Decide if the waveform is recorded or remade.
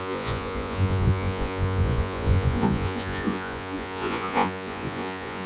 remade